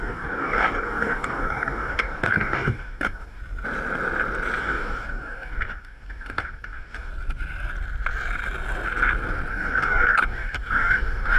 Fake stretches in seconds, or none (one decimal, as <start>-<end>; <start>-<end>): 0.0-3.4; 4.6-7.1; 9.5-11.4